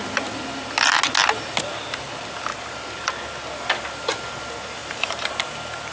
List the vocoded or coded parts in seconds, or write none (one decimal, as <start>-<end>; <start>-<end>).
2.5-3.1; 4.8-5.3